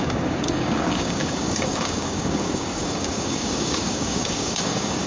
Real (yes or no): no